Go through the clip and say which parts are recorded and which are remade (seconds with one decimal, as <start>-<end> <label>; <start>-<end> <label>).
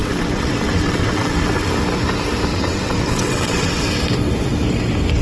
0.0-1.7 remade; 1.7-2.5 recorded; 2.5-3.9 remade; 3.9-5.2 recorded